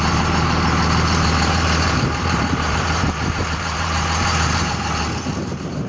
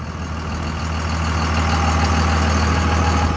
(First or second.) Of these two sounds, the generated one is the first